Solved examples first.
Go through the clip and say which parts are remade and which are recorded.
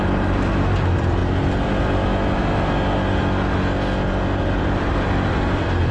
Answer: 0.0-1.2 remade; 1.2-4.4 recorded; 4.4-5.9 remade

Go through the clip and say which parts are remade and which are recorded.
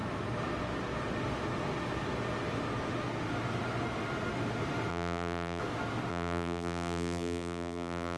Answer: 0.0-4.9 recorded; 4.9-5.6 remade; 5.6-6.1 recorded; 6.1-8.2 remade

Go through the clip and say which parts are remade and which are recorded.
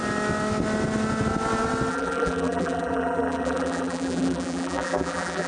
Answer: 0.0-1.9 recorded; 1.9-5.5 remade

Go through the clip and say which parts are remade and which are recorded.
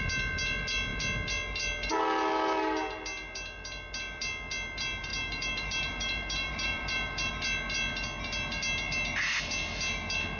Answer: 0.0-5.1 recorded; 5.1-7.3 remade; 7.3-10.4 recorded